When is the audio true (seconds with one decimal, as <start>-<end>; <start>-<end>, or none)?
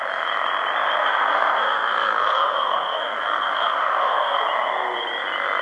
0.0-1.0; 4.4-5.6